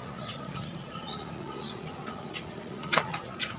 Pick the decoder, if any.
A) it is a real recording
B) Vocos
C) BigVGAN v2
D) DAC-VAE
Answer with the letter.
B